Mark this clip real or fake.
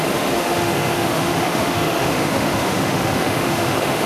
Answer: fake